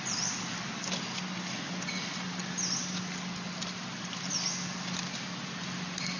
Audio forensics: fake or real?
real